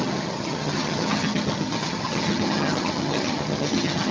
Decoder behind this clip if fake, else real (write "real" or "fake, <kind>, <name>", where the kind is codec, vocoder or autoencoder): fake, vocoder, HiFi-GAN